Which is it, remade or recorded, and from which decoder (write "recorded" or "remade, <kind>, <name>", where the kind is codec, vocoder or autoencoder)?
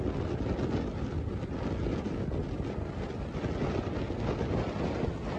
recorded